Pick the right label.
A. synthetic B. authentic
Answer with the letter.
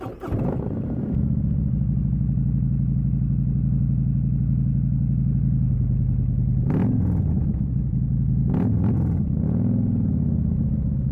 B